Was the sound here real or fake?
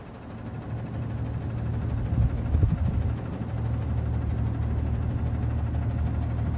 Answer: real